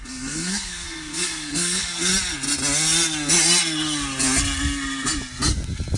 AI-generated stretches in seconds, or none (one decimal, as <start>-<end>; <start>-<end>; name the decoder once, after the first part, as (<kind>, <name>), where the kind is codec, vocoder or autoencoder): 0.0-2.1 (codec, SNAC)